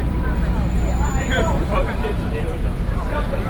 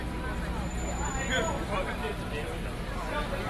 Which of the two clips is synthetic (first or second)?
first